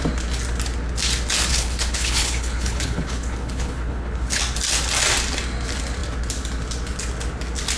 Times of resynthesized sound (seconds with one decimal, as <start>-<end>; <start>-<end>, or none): 1.5-4.4